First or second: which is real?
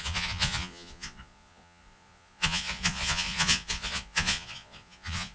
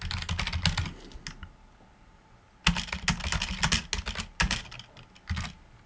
second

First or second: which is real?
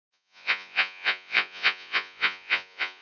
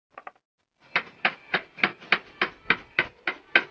second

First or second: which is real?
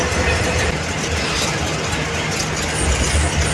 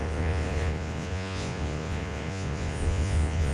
first